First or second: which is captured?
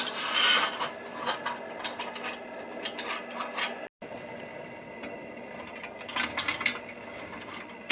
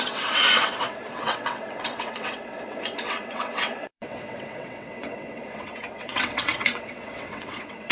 first